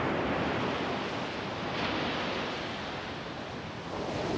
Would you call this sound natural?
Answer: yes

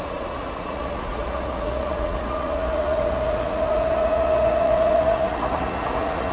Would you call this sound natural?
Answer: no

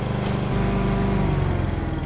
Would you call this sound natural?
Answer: yes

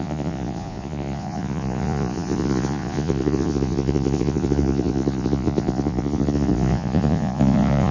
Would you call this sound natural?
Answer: no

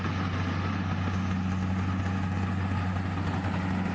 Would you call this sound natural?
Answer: yes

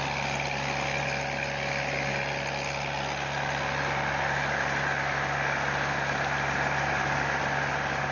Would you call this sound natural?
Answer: yes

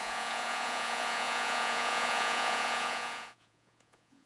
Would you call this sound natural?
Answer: no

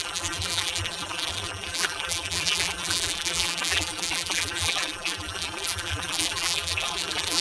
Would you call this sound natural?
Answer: no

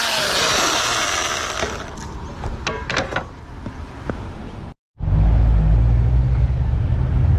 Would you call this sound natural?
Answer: yes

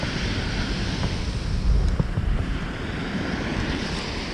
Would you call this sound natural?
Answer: yes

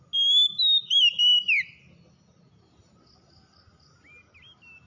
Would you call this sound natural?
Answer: yes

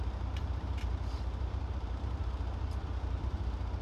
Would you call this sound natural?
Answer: no